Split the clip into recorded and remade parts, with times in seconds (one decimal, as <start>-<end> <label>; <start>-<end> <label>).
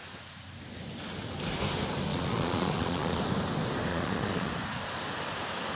0.0-2.1 recorded; 2.1-3.2 remade; 3.2-3.9 recorded; 3.9-4.5 remade; 4.5-5.8 recorded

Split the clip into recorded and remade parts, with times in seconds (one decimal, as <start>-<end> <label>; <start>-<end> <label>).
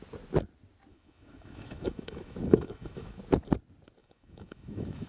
0.0-0.9 recorded; 0.9-3.2 remade; 3.2-4.0 recorded; 4.0-5.1 remade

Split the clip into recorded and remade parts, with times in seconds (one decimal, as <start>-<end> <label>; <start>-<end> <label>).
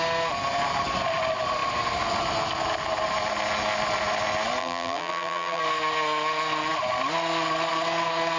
0.0-4.6 recorded; 4.6-5.6 remade; 5.6-8.4 recorded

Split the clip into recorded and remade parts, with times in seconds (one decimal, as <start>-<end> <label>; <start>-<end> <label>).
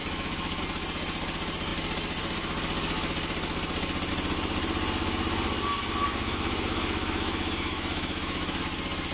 0.0-0.6 remade; 0.6-6.1 recorded; 6.1-8.6 remade; 8.6-9.1 recorded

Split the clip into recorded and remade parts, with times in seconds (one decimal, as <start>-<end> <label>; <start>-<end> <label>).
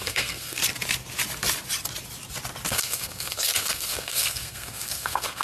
0.0-0.6 remade; 0.6-2.7 recorded; 2.7-5.4 remade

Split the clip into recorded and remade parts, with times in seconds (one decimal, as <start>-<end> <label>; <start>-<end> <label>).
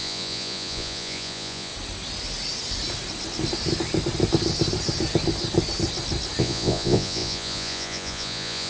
0.0-1.7 remade; 1.7-6.4 recorded; 6.4-8.7 remade